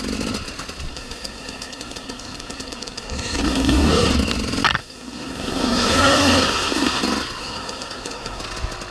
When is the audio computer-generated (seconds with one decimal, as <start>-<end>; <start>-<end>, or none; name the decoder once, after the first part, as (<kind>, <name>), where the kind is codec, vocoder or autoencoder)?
0.9-4.1 (codec, SNAC); 4.8-7.0; 7.4-8.4